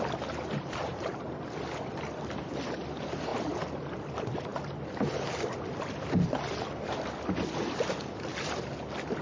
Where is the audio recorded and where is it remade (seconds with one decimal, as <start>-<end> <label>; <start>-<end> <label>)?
0.0-9.2 recorded